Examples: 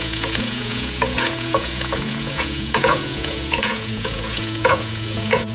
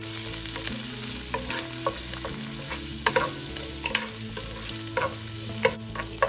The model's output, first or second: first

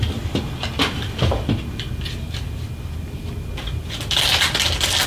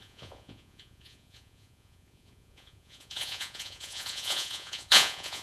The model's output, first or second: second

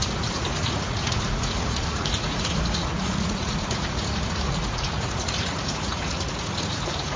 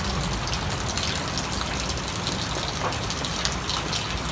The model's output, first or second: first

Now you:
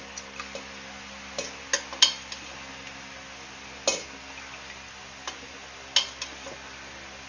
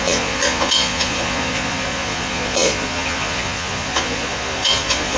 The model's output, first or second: second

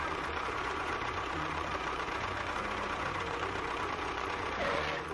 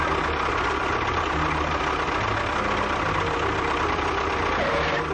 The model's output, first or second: first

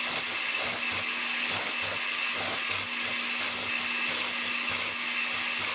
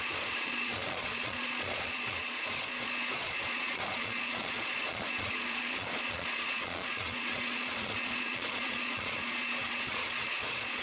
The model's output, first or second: second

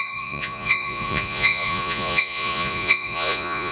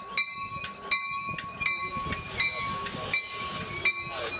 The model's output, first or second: first